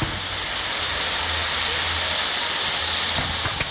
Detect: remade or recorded recorded